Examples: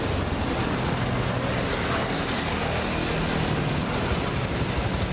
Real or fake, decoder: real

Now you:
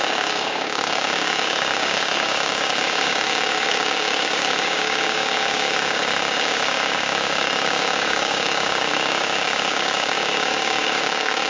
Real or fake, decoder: fake, codec, DAC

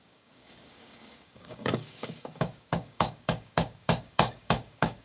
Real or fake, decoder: fake, codec, DAC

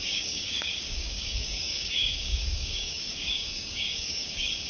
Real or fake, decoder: fake, codec, DAC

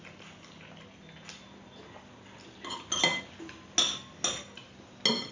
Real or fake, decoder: real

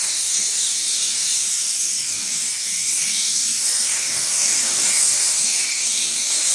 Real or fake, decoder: fake, codec, DAC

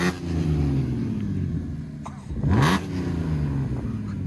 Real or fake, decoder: real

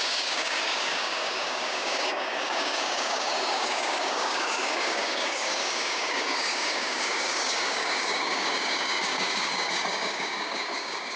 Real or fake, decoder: fake, codec, DAC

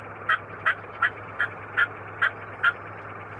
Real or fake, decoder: real